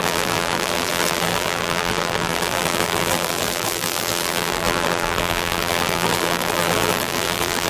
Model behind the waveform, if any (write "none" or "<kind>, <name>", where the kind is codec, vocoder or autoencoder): vocoder, BigVGAN v2